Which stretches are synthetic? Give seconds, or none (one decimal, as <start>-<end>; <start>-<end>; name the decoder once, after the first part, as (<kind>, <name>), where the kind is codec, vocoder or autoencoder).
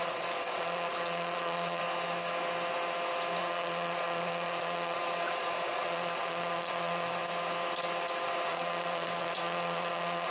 0.0-1.8 (vocoder, Vocos); 3.4-7.2; 8.5-10.3